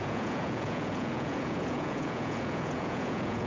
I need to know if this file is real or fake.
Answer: fake